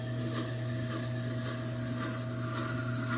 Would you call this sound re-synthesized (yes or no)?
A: no